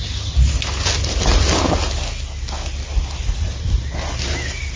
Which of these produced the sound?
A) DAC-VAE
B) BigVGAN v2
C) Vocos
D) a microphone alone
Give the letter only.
D